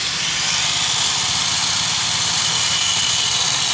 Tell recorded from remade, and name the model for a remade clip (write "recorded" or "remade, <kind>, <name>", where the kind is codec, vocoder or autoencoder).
remade, vocoder, BigVGAN v2